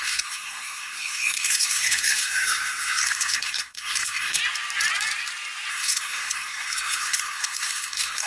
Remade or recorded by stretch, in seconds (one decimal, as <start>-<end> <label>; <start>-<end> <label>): 0.0-4.4 remade; 4.4-5.7 recorded; 5.7-8.3 remade